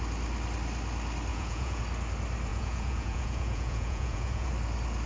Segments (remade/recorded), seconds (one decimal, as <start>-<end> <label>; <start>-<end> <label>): 0.0-1.3 recorded; 1.3-1.8 remade; 1.8-2.5 recorded; 2.5-4.5 remade; 4.5-5.1 recorded